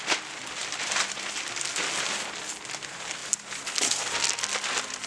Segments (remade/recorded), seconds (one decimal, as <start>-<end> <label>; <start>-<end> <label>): 0.0-5.1 recorded